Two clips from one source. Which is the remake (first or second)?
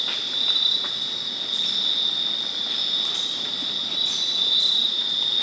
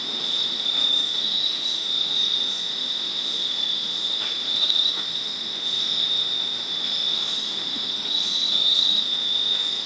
second